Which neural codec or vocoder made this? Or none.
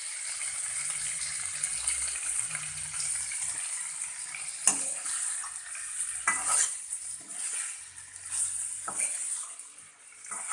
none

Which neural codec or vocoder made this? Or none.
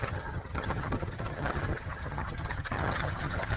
vocoder, HiFi-GAN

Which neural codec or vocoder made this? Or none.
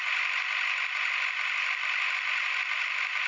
none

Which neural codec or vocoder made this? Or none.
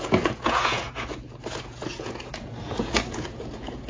vocoder, Vocos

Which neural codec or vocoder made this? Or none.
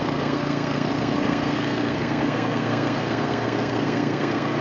codec, SNAC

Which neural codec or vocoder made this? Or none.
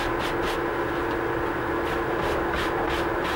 none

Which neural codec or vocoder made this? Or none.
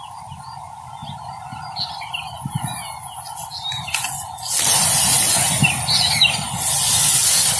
none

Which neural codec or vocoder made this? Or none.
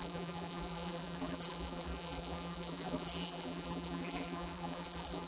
vocoder, BigVGAN v2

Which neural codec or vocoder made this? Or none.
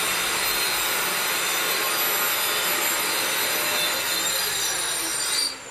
none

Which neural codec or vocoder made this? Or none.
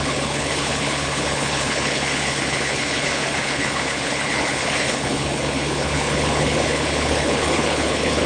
codec, HILCodec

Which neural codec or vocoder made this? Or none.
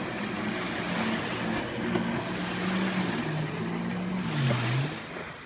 none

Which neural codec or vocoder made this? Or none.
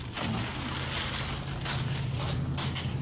none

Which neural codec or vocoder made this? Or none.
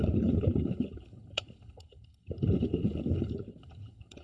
codec, HILCodec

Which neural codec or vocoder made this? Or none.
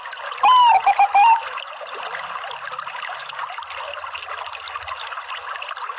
none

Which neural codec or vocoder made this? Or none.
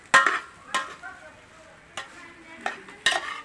none